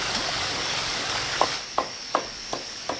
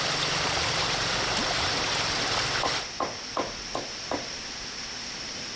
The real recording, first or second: second